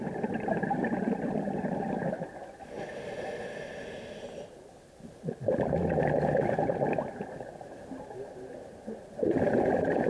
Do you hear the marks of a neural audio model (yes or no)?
no